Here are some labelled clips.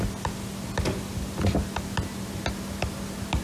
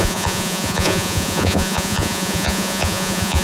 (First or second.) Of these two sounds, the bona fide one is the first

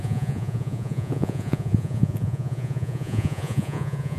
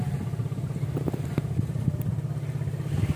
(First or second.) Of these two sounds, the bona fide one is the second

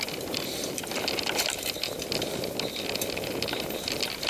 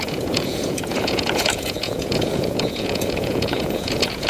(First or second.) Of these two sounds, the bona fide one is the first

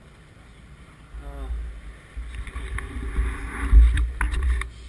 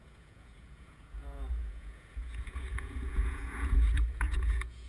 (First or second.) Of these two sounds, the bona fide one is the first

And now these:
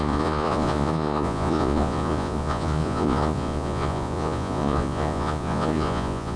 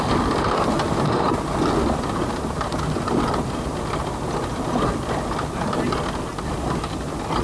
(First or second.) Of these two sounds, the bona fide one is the second